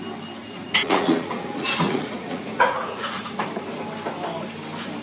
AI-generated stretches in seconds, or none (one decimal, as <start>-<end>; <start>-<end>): 0.4-3.4

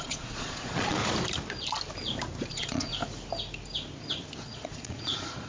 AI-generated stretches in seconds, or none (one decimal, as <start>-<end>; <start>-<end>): 0.0-1.0; 2.5-2.9; 4.4-5.5

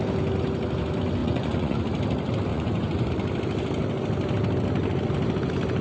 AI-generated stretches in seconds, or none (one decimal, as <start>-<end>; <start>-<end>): 1.2-1.8; 2.5-3.1

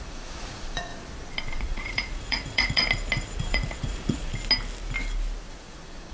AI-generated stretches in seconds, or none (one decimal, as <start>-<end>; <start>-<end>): 0.0-0.9; 1.6-2.8; 3.4-4.3; 5.5-6.1

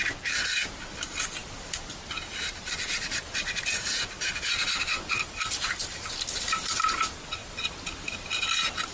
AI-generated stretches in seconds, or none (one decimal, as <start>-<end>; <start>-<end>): none

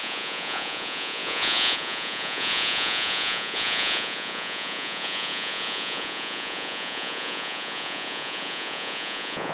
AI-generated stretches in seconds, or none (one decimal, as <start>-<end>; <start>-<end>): 0.0-9.5